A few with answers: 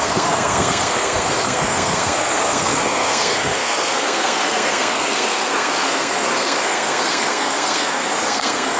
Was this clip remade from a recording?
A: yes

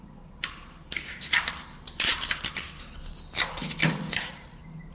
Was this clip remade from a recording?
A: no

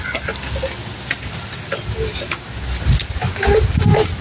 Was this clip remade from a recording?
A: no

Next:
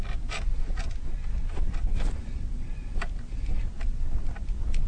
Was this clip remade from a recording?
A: no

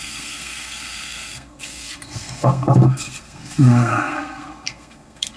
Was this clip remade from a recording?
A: yes